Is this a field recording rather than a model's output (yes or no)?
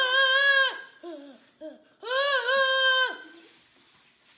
yes